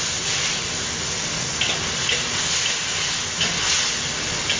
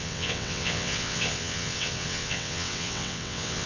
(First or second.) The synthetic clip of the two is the second